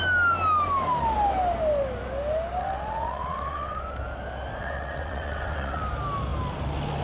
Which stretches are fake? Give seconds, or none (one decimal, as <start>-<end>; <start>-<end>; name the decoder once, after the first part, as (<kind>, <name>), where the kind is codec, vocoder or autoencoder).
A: 2.6-3.8 (vocoder, WaveNeXt); 4.6-5.8